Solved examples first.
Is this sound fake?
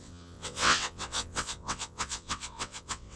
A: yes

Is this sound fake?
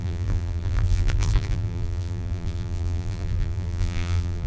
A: yes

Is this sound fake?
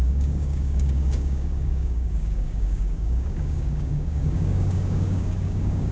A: yes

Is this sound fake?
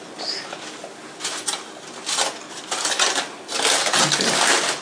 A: no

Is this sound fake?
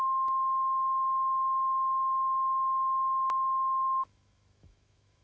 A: yes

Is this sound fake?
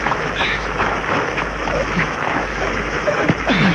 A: yes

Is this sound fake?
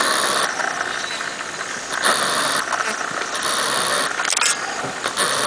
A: no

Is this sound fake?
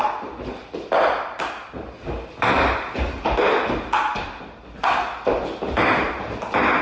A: no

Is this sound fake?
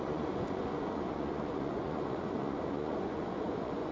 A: yes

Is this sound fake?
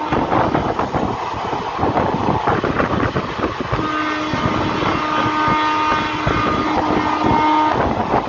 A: no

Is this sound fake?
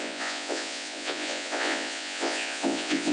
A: yes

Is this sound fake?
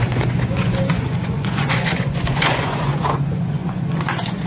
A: yes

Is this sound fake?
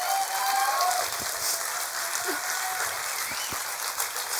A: no